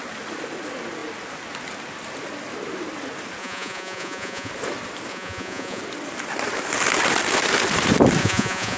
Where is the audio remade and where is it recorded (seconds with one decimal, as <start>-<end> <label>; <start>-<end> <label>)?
0.0-3.4 recorded; 3.4-4.5 remade; 4.5-5.1 recorded; 5.1-5.8 remade; 5.8-8.2 recorded; 8.2-8.8 remade